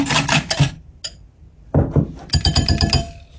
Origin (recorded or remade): recorded